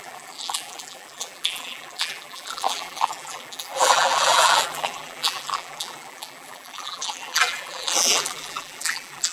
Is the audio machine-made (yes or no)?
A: yes